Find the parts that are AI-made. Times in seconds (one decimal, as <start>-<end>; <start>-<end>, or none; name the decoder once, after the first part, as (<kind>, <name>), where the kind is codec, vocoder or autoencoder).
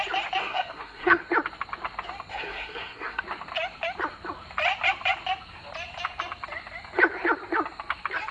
0.4-1.2 (codec, SNAC); 2.3-3.2